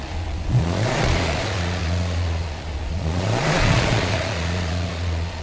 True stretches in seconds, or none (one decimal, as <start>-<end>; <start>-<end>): none

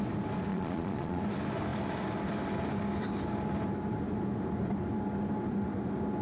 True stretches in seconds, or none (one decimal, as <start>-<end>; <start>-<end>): 0.0-0.5; 1.2-6.2

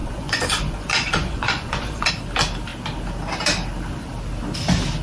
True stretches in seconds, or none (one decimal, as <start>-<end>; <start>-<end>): 2.1-5.0

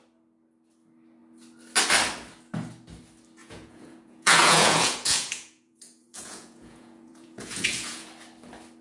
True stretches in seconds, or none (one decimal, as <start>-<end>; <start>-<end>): 0.0-3.4; 8.1-8.8